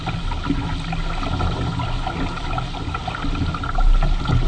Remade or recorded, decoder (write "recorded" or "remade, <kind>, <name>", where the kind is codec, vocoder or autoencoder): recorded